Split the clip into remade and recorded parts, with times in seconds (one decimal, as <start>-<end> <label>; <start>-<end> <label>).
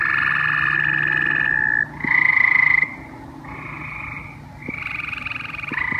0.0-6.0 recorded